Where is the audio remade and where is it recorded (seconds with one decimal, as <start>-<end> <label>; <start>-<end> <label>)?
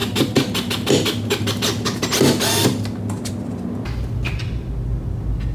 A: 0.0-5.5 recorded